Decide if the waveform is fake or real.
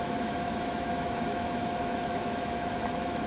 fake